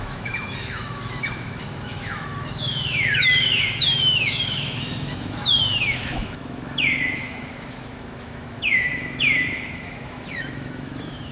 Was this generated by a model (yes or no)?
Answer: yes